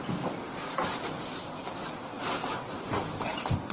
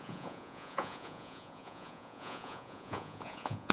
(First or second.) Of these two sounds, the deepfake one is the second